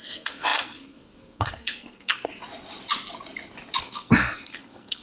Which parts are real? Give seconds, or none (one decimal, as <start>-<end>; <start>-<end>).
2.3-3.8